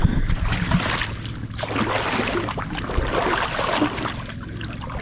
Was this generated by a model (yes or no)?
no